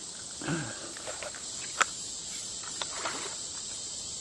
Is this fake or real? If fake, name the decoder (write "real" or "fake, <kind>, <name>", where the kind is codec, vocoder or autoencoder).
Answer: real